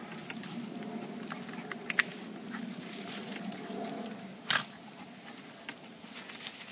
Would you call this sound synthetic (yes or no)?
no